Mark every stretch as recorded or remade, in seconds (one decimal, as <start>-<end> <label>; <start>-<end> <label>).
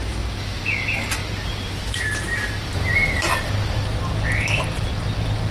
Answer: 0.0-1.2 recorded; 1.2-4.0 remade; 4.0-5.5 recorded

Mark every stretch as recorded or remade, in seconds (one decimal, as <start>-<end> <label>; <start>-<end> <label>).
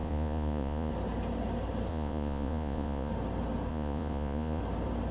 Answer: 0.0-0.9 remade; 0.9-1.9 recorded; 1.9-3.1 remade; 3.1-3.7 recorded; 3.7-4.6 remade; 4.6-5.1 recorded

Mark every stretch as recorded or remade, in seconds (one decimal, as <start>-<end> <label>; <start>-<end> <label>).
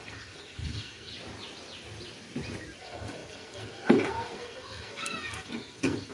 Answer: 0.0-1.1 remade; 1.1-2.8 recorded; 2.8-6.1 remade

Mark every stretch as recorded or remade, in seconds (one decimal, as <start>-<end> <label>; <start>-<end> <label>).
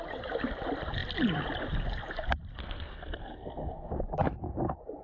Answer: 0.0-2.6 recorded; 2.6-3.9 remade; 3.9-5.0 recorded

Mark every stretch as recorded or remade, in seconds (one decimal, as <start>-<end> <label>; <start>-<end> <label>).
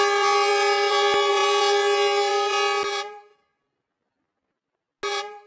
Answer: 0.0-5.5 recorded